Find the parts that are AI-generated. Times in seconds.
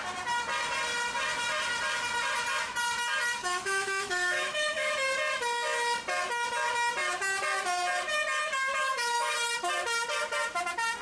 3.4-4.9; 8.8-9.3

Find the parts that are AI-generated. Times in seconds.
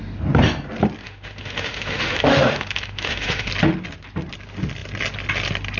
1.0-3.5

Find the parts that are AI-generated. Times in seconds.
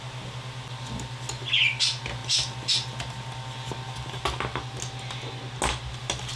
none